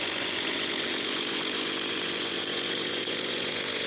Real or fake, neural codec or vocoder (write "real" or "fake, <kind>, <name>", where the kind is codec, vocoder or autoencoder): fake, vocoder, Vocos